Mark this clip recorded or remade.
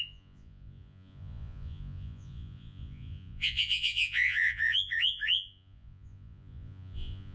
remade